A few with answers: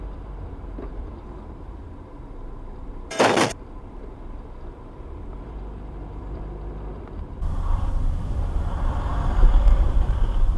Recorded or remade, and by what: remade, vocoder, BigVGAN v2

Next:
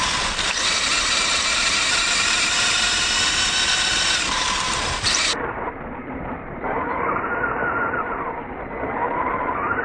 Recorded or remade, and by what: remade, vocoder, BigVGAN v2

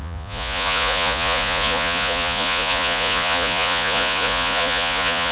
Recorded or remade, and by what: remade, vocoder, Vocos